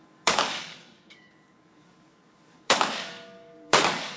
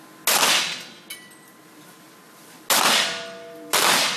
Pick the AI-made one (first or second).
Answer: first